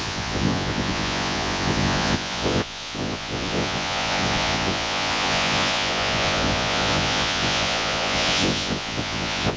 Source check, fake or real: fake